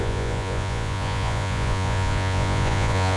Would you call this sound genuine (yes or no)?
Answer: no